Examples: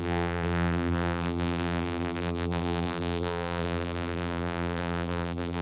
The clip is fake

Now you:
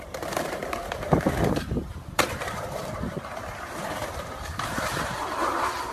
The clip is fake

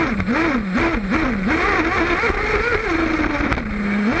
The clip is real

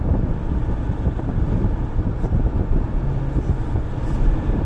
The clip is real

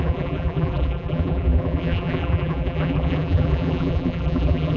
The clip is fake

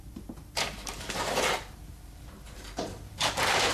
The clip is fake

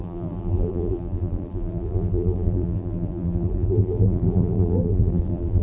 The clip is fake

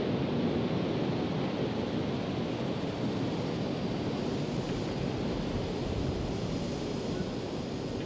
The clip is real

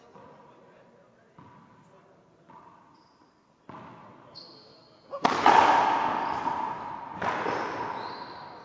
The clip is real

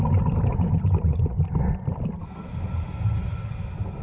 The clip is real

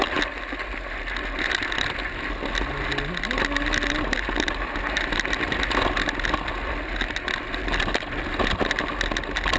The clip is real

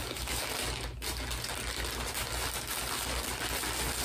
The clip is real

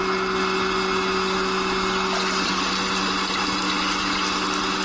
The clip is real